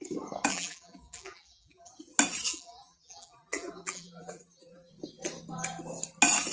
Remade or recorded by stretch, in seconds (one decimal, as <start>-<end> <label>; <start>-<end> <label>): 0.0-0.5 recorded; 0.5-1.9 remade; 1.9-2.5 recorded; 2.5-4.9 remade; 4.9-6.5 recorded